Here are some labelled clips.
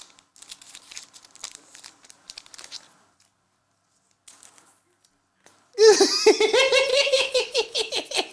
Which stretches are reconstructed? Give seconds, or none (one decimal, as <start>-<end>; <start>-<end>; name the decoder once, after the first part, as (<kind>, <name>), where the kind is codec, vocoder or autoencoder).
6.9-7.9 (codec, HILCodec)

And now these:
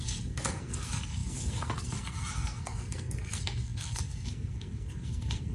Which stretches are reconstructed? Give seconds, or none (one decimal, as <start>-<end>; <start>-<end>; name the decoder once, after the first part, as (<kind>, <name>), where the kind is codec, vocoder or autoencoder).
0.0-5.5 (codec, SNAC)

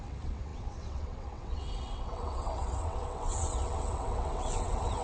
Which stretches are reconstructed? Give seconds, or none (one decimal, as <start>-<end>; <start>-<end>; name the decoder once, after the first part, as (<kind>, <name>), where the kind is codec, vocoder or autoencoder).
0.0-5.0 (vocoder, WaveNeXt)